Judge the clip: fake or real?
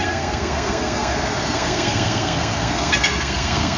fake